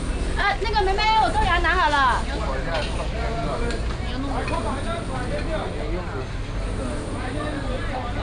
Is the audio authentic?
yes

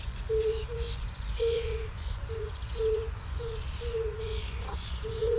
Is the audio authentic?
no